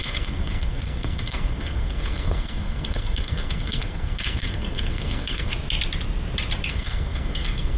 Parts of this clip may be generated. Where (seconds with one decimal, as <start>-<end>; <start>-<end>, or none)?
0.0-5.5; 6.7-7.8